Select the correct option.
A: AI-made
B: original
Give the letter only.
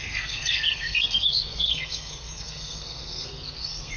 A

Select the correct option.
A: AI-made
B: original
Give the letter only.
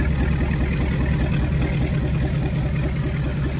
B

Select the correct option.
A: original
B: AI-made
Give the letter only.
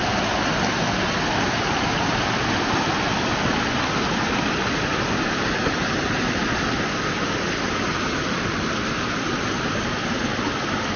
A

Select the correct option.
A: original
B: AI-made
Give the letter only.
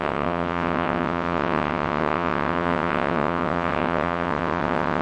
B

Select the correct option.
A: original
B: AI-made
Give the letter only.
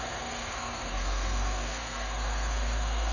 B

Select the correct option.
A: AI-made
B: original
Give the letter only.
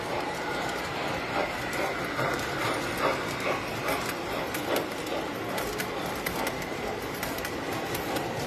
A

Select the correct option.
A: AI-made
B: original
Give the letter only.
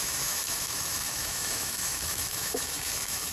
A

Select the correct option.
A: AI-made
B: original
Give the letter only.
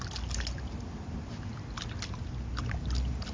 B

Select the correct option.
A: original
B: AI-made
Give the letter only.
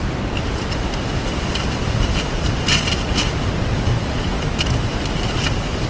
B